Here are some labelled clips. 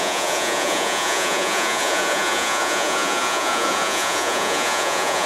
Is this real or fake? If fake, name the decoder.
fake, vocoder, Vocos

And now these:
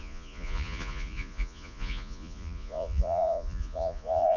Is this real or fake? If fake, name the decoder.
fake, vocoder, Vocos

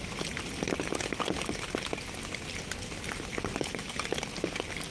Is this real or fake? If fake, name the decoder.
real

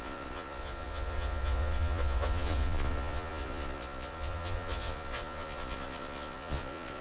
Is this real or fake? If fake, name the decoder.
fake, vocoder, Vocos